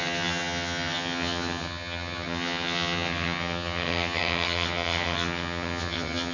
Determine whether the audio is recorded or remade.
remade